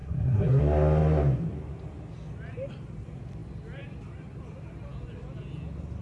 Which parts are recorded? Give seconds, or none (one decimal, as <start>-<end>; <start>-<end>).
0.6-6.0